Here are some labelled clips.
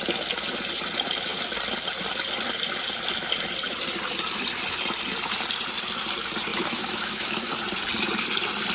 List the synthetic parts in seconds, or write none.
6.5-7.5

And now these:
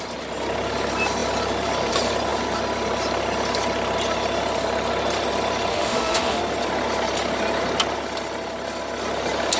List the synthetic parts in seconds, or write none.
5.7-6.4

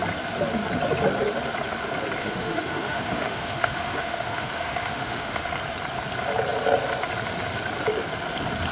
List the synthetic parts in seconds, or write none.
2.2-5.5

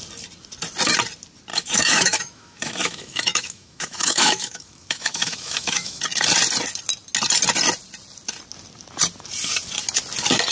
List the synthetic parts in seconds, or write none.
1.5-6.0

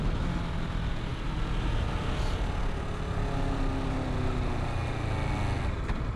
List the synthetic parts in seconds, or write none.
none

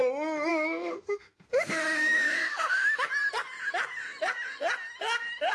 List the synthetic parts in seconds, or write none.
0.5-3.1

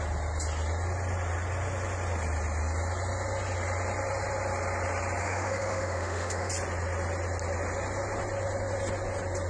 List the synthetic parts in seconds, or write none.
5.2-6.5